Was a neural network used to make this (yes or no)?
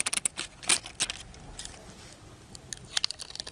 no